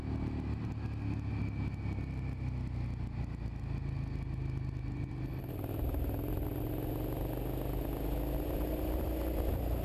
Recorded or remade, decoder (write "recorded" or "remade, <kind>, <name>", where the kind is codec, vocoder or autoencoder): recorded